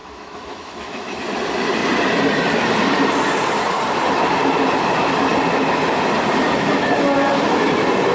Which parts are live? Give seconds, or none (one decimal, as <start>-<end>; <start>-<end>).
1.2-8.1